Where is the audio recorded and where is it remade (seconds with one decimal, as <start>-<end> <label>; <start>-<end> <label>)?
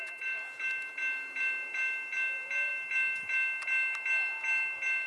0.0-5.1 recorded